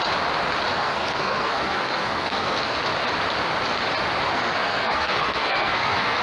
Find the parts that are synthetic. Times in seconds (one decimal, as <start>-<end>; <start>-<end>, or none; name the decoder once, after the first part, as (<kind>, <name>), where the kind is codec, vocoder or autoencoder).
0.7-2.8 (codec, SNAC); 4.3-6.2